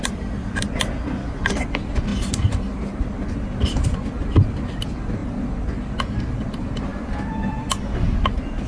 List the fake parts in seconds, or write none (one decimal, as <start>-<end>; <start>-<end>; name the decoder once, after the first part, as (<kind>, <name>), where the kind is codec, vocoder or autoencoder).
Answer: 0.0-2.1 (vocoder, BigVGAN v2); 3.0-5.2; 6.5-8.7